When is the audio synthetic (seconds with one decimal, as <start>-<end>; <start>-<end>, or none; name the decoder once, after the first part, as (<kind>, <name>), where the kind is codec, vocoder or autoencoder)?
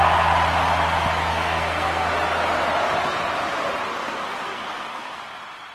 1.3-2.1 (codec, SNAC); 3.9-5.2